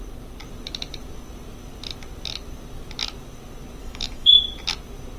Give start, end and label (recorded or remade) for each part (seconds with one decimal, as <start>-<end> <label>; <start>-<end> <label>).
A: 0.0-3.8 recorded; 3.8-4.4 remade; 4.4-5.2 recorded